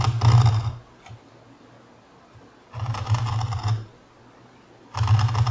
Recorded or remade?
recorded